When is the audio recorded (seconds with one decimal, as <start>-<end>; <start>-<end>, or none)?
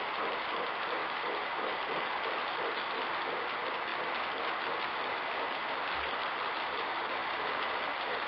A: 0.0-1.0; 1.8-7.2; 7.7-8.3